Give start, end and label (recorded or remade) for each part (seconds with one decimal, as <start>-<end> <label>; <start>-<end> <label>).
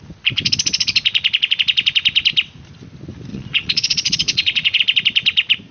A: 0.0-3.3 recorded; 3.3-4.8 remade; 4.8-5.7 recorded